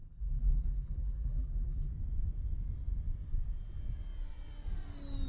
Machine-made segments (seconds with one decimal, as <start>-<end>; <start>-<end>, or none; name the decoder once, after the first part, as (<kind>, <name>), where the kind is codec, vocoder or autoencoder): 0.0-1.9 (vocoder, BigVGAN v2)